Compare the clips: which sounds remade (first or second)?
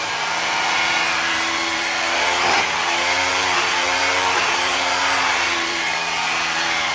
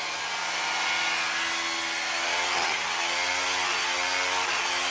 first